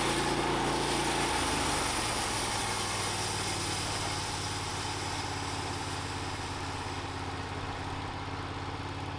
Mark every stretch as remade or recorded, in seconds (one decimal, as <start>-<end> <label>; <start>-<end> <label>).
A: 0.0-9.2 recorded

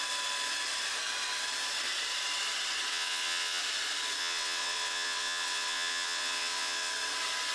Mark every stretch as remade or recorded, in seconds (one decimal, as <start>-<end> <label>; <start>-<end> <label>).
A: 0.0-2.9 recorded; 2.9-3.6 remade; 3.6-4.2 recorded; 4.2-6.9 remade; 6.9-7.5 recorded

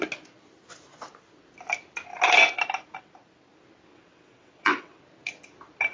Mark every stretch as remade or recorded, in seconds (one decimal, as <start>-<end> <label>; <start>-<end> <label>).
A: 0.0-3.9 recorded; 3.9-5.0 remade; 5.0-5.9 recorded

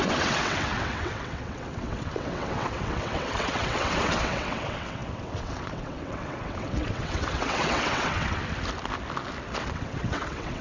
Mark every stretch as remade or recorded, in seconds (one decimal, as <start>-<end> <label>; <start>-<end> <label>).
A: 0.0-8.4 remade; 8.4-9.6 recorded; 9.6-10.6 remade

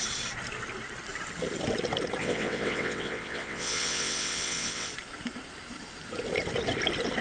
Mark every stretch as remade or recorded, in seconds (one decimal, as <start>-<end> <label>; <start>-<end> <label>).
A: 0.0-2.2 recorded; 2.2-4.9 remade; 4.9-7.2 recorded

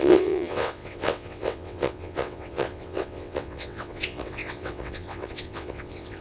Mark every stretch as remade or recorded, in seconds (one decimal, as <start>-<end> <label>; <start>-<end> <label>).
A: 0.0-6.2 remade